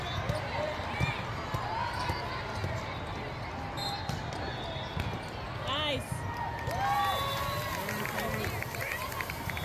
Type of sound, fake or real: real